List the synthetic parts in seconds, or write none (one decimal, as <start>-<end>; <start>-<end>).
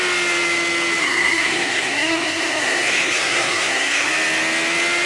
1.0-4.1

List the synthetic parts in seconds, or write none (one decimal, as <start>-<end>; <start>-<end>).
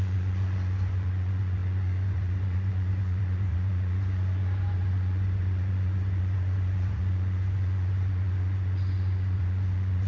0.0-10.1